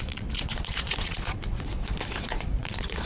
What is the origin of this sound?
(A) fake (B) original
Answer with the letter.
A